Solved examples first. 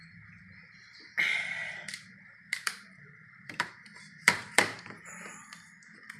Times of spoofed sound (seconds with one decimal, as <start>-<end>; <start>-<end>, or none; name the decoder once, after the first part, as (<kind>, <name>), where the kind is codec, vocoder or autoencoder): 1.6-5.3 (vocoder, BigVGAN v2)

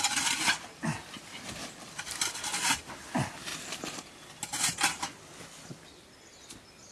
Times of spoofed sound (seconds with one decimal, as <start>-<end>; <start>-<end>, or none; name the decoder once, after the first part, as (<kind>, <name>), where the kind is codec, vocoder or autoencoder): 1.6-2.8 (vocoder, BigVGAN v2); 3.5-4.1

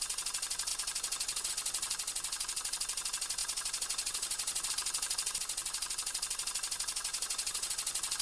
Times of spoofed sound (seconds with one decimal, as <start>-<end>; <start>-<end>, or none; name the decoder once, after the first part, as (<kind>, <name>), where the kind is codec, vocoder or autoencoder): 3.4-4.7 (vocoder, BigVGAN v2); 7.1-7.7

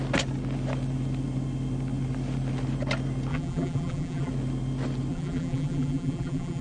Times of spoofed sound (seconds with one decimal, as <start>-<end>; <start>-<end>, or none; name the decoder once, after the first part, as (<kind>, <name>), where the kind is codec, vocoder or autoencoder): 3.3-4.3 (vocoder, BigVGAN v2); 5.1-6.6